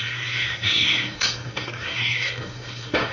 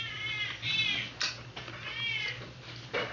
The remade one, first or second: first